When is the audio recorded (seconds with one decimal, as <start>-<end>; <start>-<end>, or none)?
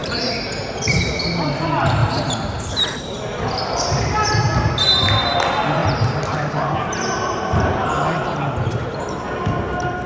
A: 0.7-2.0; 3.2-5.8; 9.2-10.1